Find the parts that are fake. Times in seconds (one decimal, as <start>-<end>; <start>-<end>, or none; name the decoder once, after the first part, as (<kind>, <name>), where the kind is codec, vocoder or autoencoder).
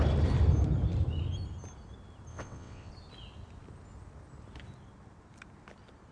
2.3-2.9 (vocoder, WaveNeXt)